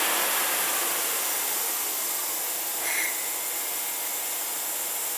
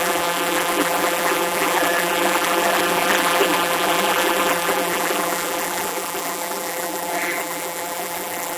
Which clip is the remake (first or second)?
second